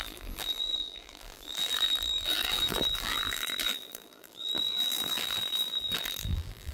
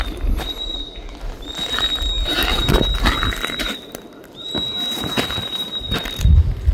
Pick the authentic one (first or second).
second